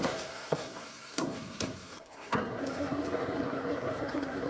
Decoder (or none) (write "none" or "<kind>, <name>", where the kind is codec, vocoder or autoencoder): codec, SNAC